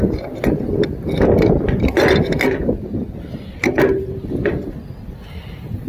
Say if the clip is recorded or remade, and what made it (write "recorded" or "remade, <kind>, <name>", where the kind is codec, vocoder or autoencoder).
recorded